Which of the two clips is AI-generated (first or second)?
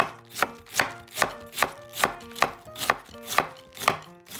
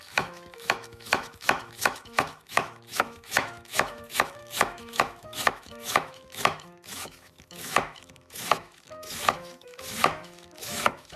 second